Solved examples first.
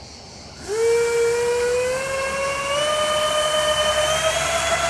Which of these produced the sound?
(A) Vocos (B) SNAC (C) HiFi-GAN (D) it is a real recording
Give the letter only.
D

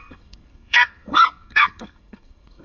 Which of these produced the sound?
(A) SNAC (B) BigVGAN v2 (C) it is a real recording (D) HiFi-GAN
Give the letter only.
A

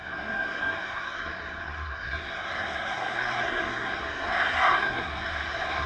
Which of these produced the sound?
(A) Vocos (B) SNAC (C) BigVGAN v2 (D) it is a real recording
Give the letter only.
B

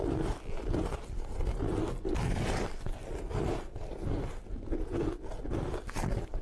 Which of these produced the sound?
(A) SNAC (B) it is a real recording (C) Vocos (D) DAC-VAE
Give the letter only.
B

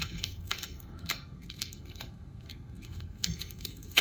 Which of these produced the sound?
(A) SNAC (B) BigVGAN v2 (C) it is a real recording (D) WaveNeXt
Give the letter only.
A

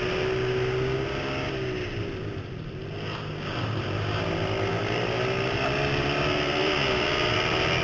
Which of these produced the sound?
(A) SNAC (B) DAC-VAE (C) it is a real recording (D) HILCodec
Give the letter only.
C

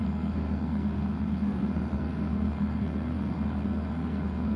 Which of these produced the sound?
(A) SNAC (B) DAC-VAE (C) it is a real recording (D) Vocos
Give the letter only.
A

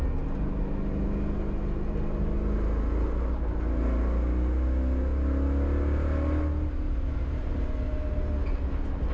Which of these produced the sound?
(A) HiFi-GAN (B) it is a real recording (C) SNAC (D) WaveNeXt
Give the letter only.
B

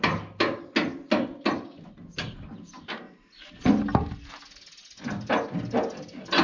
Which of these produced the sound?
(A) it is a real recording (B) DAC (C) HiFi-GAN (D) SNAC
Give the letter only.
A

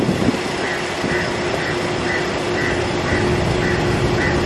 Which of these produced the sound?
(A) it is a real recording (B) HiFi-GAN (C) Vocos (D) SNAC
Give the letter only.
A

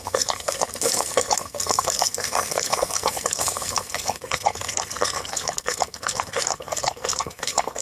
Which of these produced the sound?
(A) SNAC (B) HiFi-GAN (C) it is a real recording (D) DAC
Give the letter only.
A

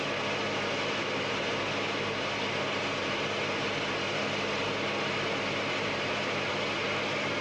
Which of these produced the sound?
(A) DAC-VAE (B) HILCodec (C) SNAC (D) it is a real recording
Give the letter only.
D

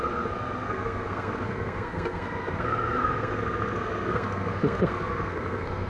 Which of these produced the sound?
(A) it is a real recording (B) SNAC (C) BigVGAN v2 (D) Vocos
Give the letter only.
B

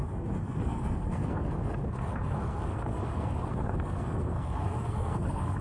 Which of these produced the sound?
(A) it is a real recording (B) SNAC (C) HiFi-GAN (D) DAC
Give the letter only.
B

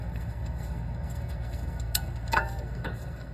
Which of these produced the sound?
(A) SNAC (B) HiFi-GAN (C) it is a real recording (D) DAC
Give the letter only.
A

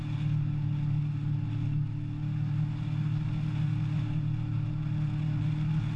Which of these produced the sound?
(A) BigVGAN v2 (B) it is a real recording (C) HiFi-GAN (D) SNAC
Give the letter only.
B